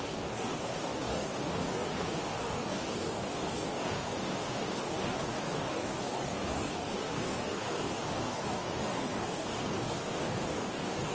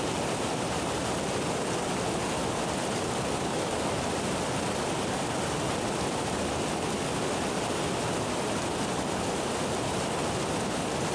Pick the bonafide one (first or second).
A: second